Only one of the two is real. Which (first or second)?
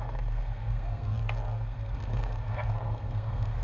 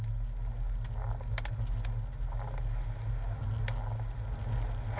second